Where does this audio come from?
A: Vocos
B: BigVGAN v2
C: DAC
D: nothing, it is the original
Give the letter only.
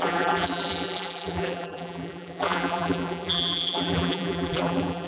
B